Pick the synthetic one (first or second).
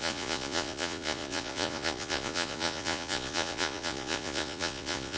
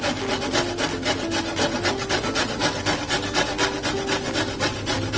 first